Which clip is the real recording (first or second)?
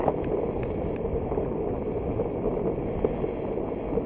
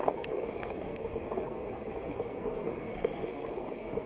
first